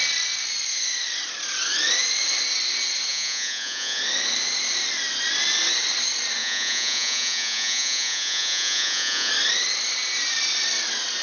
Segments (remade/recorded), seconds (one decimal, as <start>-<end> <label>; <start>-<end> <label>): 0.0-3.1 recorded; 3.1-4.0 remade; 4.0-6.4 recorded; 6.4-9.3 remade; 9.3-11.2 recorded